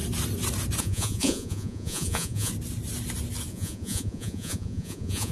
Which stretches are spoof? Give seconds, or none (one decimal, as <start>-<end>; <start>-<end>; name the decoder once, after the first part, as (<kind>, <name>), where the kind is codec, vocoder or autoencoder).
0.8-2.5 (vocoder, Vocos); 3.5-5.3